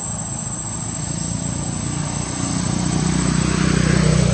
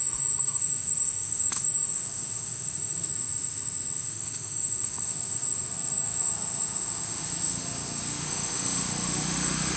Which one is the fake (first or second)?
second